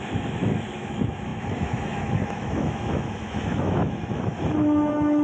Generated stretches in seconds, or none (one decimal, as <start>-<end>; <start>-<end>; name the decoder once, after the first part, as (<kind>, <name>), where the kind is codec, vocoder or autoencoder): 0.0-5.2 (autoencoder, DAC-VAE)

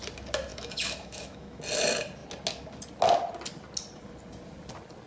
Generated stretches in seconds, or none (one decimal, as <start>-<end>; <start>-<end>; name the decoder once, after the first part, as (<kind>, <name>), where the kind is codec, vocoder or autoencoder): 0.5-1.6 (autoencoder, DAC-VAE)

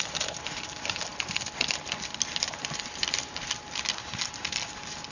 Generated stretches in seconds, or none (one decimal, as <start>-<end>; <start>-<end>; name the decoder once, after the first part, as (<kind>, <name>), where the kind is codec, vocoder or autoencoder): none

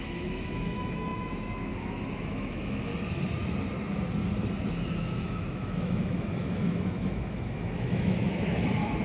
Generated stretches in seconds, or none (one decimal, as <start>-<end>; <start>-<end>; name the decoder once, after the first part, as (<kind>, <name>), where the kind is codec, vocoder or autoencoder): 0.0-2.9 (autoencoder, DAC-VAE); 4.9-9.0

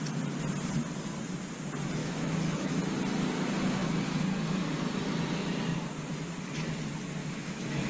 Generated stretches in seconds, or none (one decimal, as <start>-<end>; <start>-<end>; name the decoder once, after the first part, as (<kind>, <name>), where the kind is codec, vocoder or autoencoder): 2.0-2.8 (autoencoder, DAC-VAE); 7.2-7.9

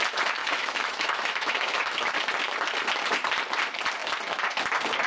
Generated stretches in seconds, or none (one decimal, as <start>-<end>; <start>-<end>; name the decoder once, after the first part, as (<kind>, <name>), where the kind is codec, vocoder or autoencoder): 0.4-2.1 (autoencoder, DAC-VAE)

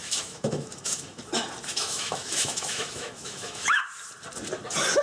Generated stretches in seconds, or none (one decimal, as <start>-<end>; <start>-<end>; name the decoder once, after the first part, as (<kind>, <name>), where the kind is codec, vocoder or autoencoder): 0.0-1.2 (autoencoder, DAC-VAE); 1.7-3.8